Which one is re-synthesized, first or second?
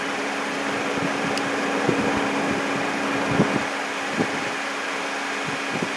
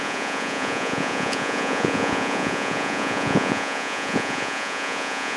second